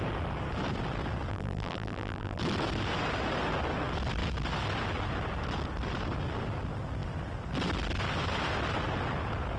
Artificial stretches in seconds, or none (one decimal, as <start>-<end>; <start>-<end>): 1.3-2.4